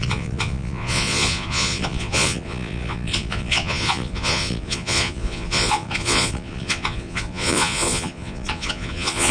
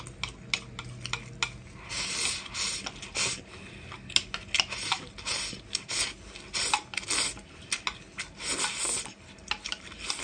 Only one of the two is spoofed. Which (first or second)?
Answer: first